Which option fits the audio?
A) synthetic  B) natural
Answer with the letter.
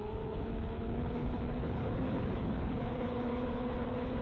A